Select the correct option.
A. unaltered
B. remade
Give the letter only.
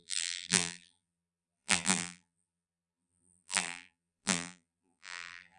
B